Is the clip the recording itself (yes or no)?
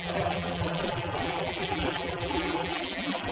no